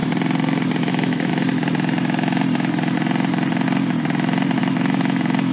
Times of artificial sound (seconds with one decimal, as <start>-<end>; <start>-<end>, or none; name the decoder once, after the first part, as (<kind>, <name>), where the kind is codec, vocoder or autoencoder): 0.9-1.3 (autoencoder, DAC-VAE); 4.6-5.5